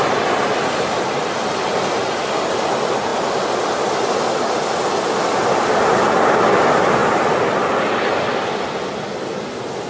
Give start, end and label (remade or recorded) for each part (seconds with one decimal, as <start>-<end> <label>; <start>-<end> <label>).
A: 0.0-9.9 recorded